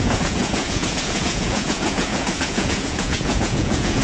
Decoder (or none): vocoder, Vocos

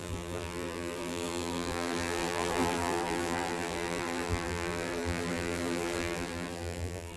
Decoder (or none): vocoder, BigVGAN v2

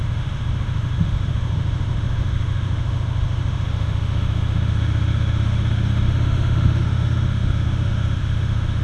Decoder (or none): autoencoder, DAC-VAE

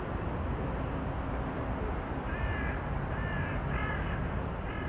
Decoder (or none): none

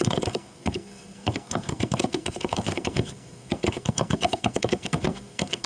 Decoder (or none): codec, SNAC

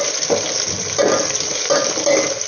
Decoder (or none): none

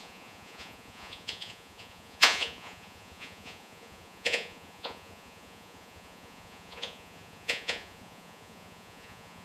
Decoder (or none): vocoder, Vocos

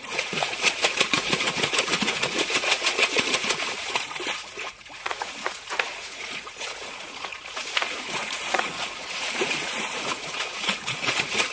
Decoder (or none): vocoder, Vocos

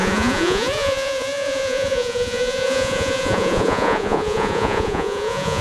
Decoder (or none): vocoder, Vocos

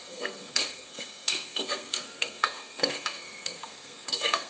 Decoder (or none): codec, SNAC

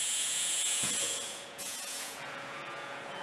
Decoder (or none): vocoder, Vocos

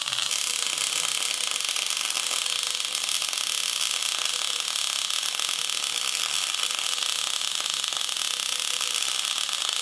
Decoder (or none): vocoder, BigVGAN v2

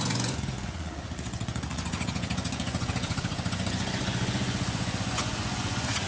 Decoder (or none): vocoder, Vocos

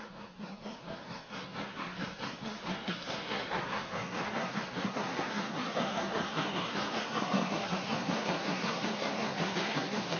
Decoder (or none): codec, SNAC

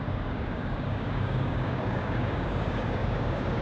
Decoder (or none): codec, DAC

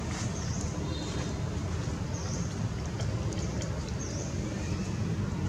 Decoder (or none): none